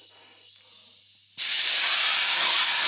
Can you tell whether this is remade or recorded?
recorded